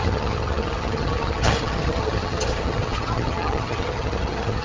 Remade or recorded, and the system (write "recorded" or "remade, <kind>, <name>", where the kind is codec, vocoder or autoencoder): remade, vocoder, HiFi-GAN